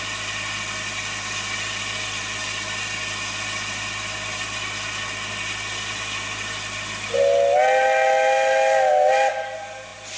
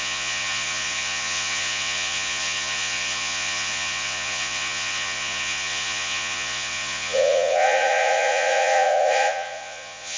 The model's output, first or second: second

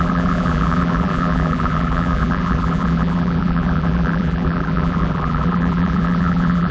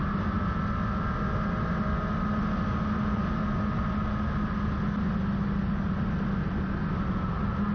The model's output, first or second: first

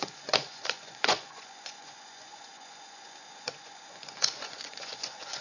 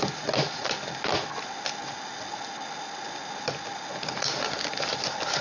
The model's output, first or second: first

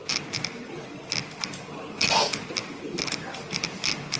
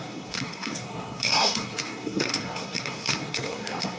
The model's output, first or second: second